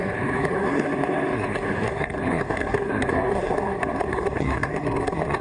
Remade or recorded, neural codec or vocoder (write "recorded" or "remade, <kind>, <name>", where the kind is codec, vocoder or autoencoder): remade, codec, SNAC